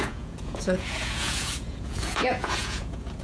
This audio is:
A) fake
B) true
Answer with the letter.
A